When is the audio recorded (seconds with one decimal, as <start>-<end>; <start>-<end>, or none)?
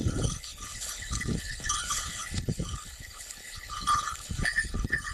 none